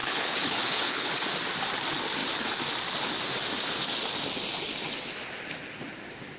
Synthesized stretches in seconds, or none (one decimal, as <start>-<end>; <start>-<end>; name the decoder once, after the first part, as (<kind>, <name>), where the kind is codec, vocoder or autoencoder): 0.0-1.1 (codec, HILCodec)